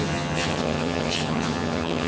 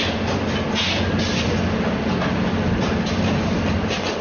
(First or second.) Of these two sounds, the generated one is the first